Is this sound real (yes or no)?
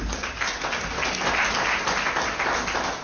yes